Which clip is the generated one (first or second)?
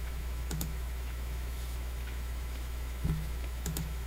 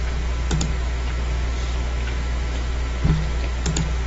first